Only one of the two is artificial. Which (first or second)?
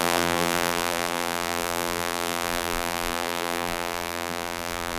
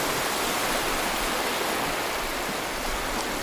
first